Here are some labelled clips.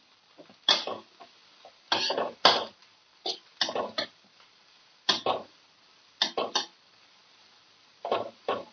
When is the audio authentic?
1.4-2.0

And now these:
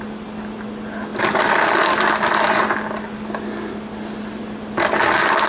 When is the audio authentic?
0.0-5.5

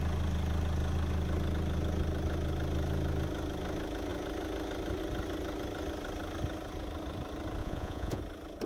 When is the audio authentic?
0.0-7.6; 8.2-8.7

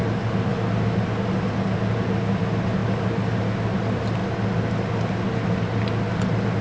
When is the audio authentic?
0.0-6.6

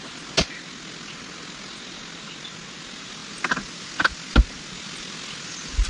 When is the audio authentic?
0.0-5.9